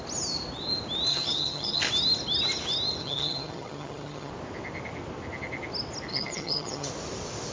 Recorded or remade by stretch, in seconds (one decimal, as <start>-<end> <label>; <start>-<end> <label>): 0.0-1.1 recorded; 1.1-1.8 remade; 1.8-3.0 recorded; 3.0-4.3 remade; 4.3-6.1 recorded; 6.1-6.9 remade; 6.9-7.5 recorded